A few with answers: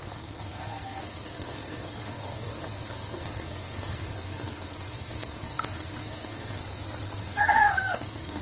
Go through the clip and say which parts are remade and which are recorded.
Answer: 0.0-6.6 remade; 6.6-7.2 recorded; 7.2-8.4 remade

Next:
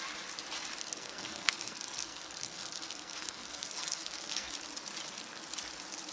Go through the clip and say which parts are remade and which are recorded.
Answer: 0.0-0.8 recorded; 0.8-4.5 remade; 4.5-6.1 recorded

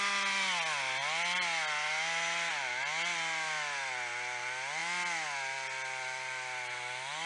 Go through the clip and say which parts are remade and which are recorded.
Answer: 0.0-7.3 recorded

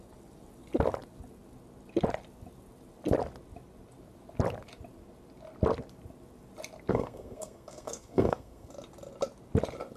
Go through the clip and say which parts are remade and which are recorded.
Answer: 0.0-6.9 recorded; 6.9-8.7 remade; 8.7-10.0 recorded